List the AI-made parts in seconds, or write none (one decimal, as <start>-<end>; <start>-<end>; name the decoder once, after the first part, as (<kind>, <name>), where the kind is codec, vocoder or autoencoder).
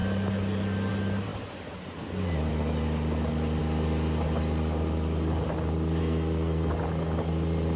6.0-6.7 (codec, SNAC)